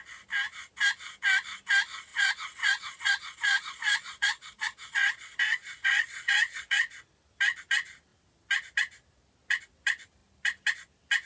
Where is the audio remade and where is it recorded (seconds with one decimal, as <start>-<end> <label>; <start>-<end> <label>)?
0.0-2.1 recorded; 2.1-7.0 remade; 7.0-11.3 recorded